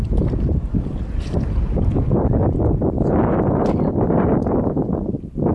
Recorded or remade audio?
recorded